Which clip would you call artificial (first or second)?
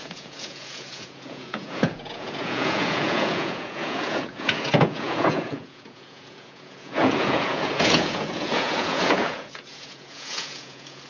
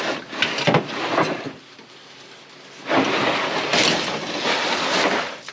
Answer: first